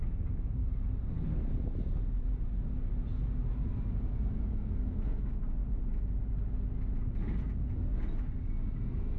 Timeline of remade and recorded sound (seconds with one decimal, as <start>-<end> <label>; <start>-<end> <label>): 0.0-4.4 recorded; 4.4-5.3 remade; 5.3-9.2 recorded